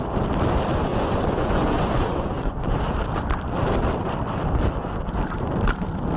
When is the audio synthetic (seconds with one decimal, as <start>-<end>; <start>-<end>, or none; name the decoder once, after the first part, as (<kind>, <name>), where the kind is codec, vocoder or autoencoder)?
0.9-2.8 (vocoder, Vocos)